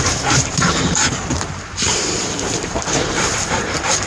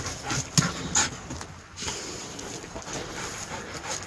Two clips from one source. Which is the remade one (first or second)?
first